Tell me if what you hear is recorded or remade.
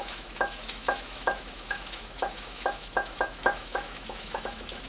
remade